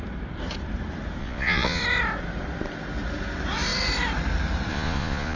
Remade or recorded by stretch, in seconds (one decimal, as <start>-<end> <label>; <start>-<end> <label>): 0.0-1.2 recorded; 1.2-1.8 remade; 1.8-4.7 recorded; 4.7-5.4 remade

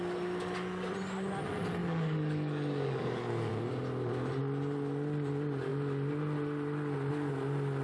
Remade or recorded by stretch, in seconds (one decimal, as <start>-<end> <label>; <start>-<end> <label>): 0.0-1.8 recorded; 1.8-3.5 remade; 3.5-7.8 recorded